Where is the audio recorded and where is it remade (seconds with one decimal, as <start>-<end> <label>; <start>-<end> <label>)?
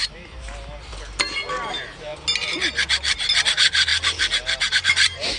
0.0-0.9 remade; 0.9-1.7 recorded; 1.7-2.1 remade; 2.1-3.5 recorded; 3.5-3.9 remade; 3.9-4.7 recorded; 4.7-5.4 remade